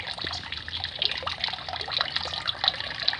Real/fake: real